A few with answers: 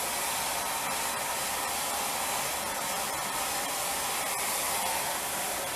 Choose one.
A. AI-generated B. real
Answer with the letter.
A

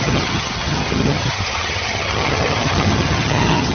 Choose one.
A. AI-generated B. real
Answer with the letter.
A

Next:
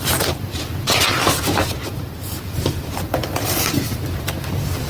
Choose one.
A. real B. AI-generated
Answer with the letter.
B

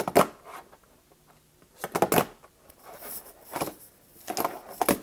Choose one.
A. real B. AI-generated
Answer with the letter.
A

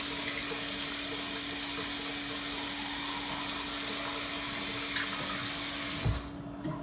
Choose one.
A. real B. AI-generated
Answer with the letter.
A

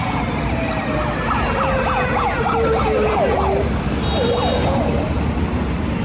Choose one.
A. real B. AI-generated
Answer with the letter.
A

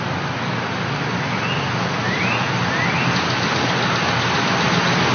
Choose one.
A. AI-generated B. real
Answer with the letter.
B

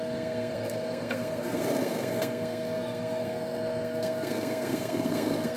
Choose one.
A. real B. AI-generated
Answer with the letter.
B